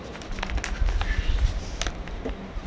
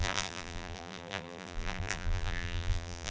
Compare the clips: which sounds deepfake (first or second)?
second